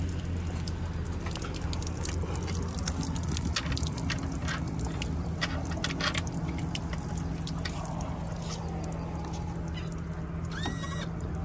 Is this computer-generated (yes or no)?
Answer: no